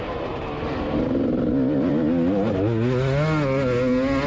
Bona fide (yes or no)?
yes